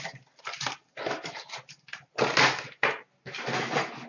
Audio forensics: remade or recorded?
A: recorded